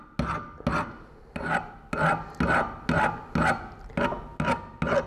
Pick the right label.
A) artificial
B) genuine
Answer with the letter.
B